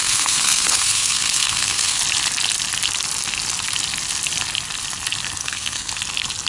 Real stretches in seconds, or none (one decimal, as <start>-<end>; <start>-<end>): 2.0-5.4; 5.9-6.5